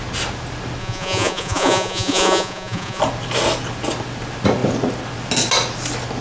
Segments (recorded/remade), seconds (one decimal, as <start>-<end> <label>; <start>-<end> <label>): 0.0-0.8 recorded; 0.8-3.0 remade; 3.0-6.2 recorded